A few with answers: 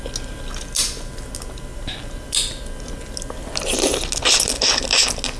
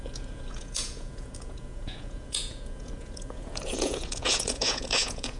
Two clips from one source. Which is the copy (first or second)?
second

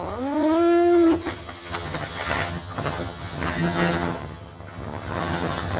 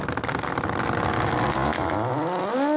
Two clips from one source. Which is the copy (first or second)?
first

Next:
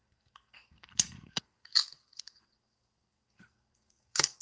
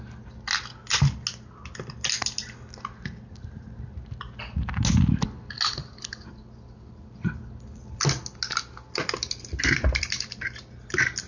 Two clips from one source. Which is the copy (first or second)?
first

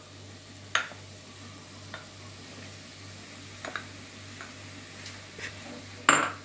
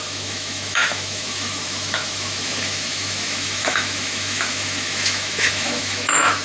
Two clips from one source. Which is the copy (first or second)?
second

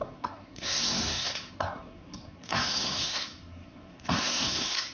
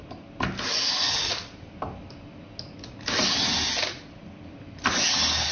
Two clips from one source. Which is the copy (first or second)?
first